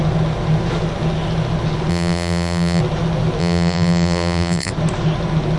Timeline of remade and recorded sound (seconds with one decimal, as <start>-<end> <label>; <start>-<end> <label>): 0.0-1.9 recorded; 1.9-2.8 remade; 2.8-3.4 recorded; 3.4-4.7 remade; 4.7-5.6 recorded